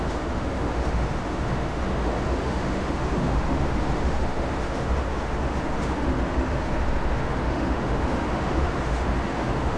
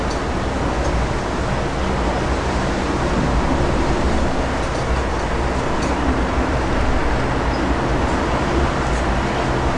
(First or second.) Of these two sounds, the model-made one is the first